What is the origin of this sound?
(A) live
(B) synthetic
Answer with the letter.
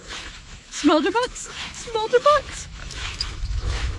B